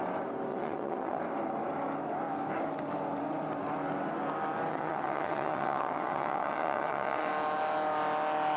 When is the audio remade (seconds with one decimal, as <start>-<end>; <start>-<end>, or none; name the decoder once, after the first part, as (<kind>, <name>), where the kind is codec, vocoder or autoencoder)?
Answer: 0.5-1.2 (vocoder, WaveNeXt); 4.7-7.3